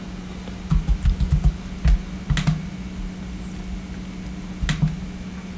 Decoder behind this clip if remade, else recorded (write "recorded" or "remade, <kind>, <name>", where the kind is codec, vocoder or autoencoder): recorded